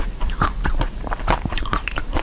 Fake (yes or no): yes